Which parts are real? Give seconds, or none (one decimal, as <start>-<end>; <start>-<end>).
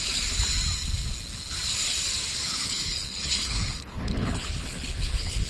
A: 0.0-2.6